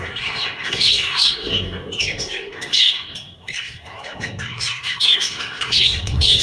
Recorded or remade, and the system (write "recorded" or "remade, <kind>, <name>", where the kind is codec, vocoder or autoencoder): remade, codec, SNAC